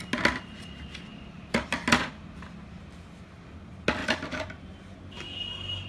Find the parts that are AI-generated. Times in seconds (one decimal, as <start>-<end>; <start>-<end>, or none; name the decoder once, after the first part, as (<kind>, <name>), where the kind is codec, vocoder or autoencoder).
none